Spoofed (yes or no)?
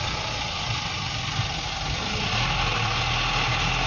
no